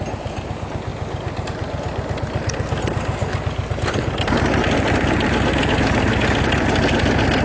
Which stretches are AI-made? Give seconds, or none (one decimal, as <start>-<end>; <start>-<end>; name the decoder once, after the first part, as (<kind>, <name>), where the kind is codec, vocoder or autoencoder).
none